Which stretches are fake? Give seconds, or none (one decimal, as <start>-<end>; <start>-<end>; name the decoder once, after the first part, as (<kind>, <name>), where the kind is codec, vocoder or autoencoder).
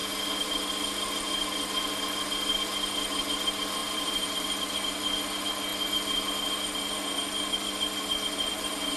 3.8-4.6 (vocoder, BigVGAN v2)